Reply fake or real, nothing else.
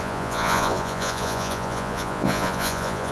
fake